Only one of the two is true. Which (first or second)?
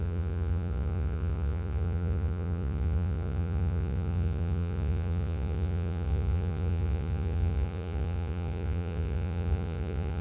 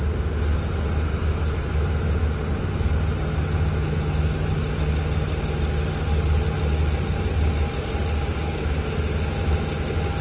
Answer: second